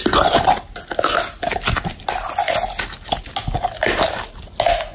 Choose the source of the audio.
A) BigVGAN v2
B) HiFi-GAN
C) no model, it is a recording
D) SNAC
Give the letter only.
C